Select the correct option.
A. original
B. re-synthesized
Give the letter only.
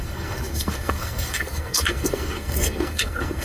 B